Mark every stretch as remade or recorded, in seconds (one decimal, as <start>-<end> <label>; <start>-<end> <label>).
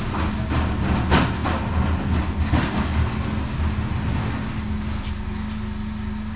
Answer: 0.0-6.4 recorded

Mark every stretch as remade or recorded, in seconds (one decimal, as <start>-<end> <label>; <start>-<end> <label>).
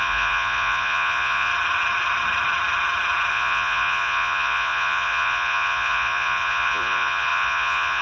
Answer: 0.0-1.5 remade; 1.5-3.3 recorded; 3.3-8.0 remade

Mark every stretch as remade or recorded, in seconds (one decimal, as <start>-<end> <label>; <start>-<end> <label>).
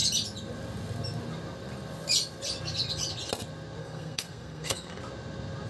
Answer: 0.0-3.8 recorded; 3.8-5.0 remade; 5.0-5.7 recorded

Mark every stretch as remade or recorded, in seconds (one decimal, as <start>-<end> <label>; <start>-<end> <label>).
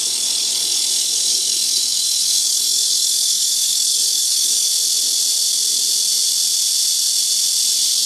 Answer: 0.0-4.7 remade; 4.7-8.1 recorded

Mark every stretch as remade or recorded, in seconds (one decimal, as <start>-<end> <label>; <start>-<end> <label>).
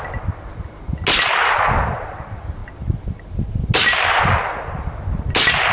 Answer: 0.0-5.7 recorded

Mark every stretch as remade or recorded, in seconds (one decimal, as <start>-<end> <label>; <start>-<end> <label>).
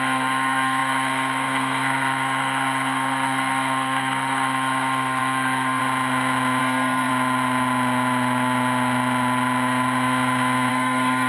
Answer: 0.0-5.8 remade; 5.8-6.6 recorded; 6.6-7.1 remade; 7.1-10.7 recorded; 10.7-11.3 remade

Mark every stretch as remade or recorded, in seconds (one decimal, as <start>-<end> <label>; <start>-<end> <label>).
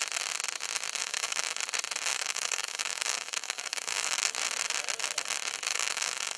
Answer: 0.0-1.0 recorded; 1.0-1.6 remade; 1.6-2.1 recorded; 2.1-4.3 remade; 4.3-5.7 recorded; 5.7-6.4 remade